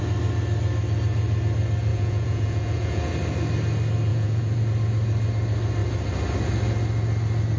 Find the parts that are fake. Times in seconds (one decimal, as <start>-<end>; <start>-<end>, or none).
1.9-3.1; 4.1-4.6